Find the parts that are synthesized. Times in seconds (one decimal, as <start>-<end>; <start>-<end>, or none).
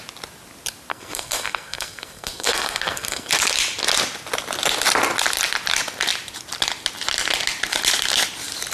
0.9-3.3